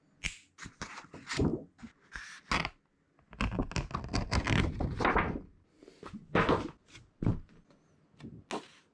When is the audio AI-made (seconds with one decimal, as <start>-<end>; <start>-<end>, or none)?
none